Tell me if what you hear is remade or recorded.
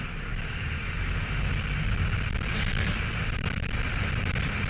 recorded